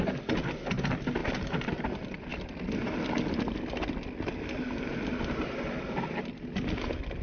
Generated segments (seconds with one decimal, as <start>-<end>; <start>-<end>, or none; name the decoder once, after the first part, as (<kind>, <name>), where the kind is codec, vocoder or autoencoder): none

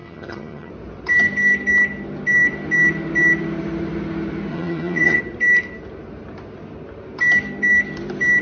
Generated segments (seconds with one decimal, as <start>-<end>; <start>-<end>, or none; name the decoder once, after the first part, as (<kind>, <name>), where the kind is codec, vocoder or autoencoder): 0.0-0.7 (vocoder, HiFi-GAN); 4.5-5.2

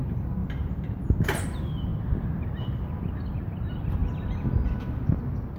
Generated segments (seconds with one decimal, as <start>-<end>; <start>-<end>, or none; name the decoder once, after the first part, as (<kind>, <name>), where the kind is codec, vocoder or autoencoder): 0.0-0.4 (vocoder, BigVGAN v2); 1.2-1.9; 3.3-4.0

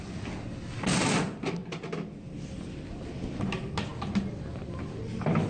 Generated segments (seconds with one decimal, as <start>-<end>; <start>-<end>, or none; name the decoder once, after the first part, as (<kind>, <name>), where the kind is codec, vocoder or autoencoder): none

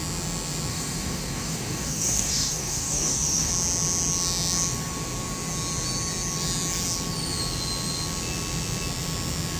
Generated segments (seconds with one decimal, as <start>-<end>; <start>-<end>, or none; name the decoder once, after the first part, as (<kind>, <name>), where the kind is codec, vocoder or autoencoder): 0.7-3.5 (codec, DAC)

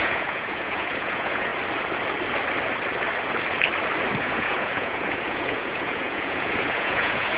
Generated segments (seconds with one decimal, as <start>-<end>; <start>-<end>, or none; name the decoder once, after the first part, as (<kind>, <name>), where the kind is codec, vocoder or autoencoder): 0.0-1.5 (vocoder, Vocos); 4.2-7.4

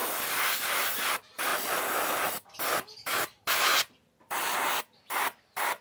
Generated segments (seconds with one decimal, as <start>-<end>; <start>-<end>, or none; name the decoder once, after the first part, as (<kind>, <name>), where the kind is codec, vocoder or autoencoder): none